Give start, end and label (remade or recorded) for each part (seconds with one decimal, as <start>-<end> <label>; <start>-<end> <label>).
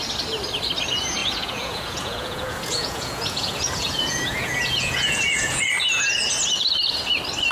0.0-1.2 recorded; 1.2-5.7 remade; 5.7-7.5 recorded